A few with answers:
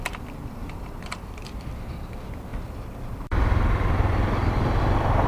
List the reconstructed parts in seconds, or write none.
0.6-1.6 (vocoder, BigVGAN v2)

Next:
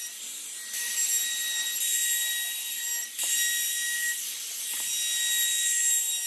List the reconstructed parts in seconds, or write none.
none

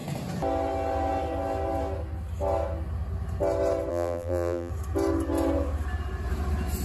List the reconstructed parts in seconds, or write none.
3.9-4.7 (vocoder, BigVGAN v2)

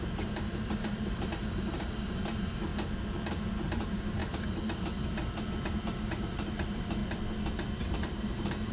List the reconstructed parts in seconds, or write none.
0.0-2.7 (vocoder, BigVGAN v2); 3.5-4.2; 5.8-7.0; 7.8-8.7

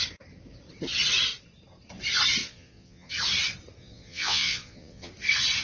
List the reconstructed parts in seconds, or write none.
2.4-3.1 (vocoder, Vocos); 3.8-5.1